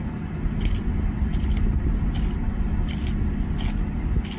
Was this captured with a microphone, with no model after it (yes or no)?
yes